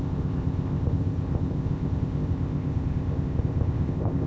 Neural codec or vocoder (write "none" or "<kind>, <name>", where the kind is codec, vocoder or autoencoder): codec, ZipCodec